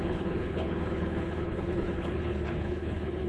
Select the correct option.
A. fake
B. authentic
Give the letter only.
A